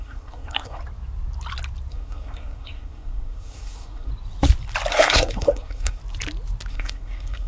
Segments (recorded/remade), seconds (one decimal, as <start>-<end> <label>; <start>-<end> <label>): 0.0-0.8 remade; 0.8-1.9 recorded; 1.9-4.1 remade; 4.1-4.9 recorded; 4.9-6.0 remade; 6.0-6.7 recorded; 6.7-7.5 remade